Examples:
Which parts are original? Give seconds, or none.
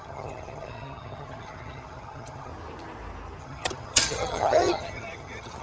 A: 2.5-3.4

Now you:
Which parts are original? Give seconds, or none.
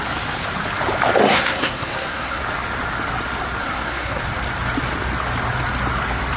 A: 0.0-1.2; 2.4-3.6; 4.2-6.4